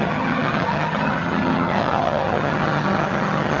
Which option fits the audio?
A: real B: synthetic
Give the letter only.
B